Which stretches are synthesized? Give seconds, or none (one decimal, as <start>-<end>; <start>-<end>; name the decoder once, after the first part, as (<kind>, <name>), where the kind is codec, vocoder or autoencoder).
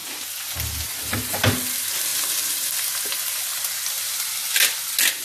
none